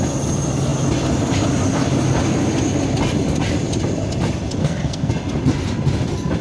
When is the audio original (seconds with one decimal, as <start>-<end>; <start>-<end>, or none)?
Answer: 0.0-4.6; 5.1-6.4